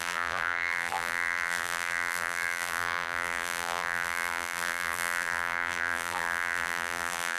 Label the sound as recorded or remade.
remade